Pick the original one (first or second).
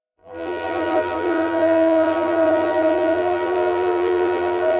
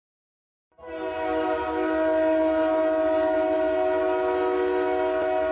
second